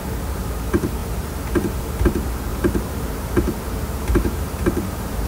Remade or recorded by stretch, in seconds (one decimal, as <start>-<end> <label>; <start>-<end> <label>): 0.0-2.5 recorded; 2.5-5.3 remade